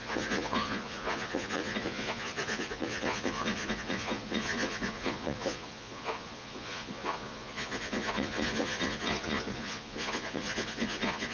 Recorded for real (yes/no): no